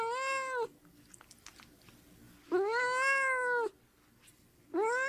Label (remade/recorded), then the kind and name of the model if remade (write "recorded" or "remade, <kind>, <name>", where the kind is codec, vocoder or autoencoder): recorded